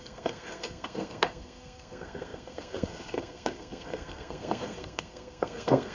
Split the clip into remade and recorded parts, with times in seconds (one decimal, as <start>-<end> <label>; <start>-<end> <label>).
0.0-5.9 remade